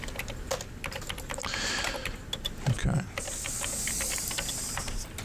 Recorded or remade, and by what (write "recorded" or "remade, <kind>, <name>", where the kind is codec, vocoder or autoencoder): recorded